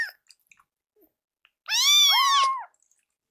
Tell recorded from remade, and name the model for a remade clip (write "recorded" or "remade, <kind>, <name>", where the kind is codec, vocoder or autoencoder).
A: recorded